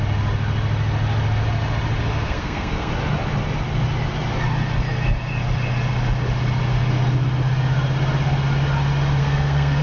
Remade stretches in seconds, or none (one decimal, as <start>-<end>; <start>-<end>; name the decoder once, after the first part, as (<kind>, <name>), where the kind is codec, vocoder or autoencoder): 2.1-2.9 (codec, SNAC); 9.2-9.8